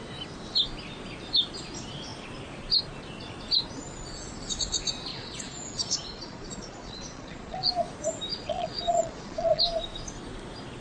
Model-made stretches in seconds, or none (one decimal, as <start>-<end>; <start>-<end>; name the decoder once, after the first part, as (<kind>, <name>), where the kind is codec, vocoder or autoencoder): 5.1-7.7 (vocoder, Vocos); 8.3-9.6